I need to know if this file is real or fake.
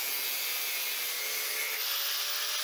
real